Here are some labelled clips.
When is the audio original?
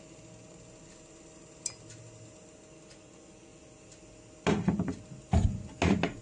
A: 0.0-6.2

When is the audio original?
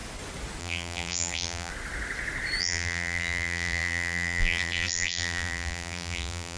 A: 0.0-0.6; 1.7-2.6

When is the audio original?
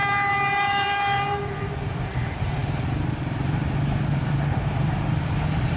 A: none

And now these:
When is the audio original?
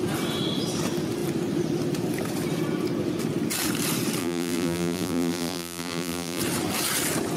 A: 0.0-4.2; 6.4-7.4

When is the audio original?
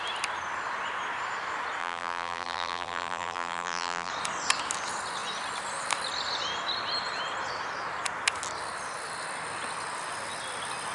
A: 0.0-1.8; 4.1-10.9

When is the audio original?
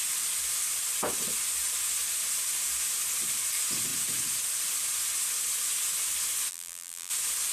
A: 0.0-6.5; 7.1-7.5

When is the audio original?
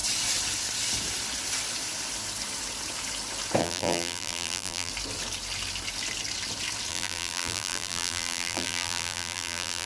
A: 0.0-3.6; 4.9-6.9